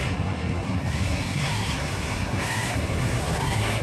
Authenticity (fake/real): fake